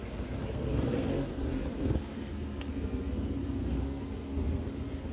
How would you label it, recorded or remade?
remade